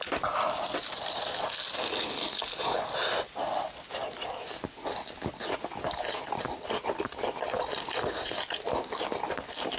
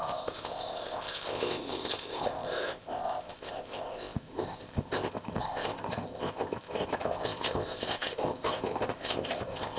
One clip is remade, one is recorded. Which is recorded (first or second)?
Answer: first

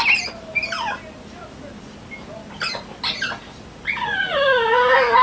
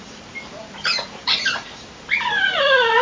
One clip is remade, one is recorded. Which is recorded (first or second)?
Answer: first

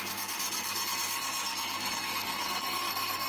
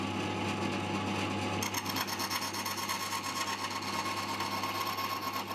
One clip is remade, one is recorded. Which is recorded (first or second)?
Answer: second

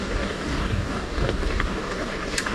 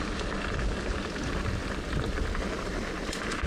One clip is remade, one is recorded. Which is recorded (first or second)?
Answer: second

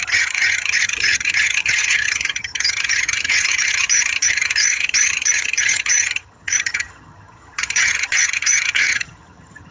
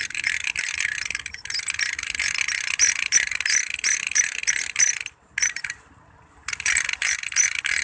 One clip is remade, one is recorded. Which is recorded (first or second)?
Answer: second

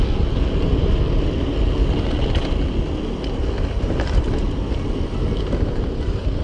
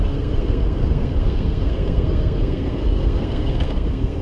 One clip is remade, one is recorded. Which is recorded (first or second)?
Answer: first